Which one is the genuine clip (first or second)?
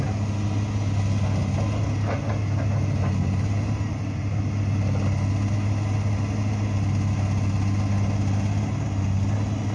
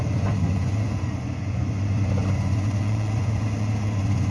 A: first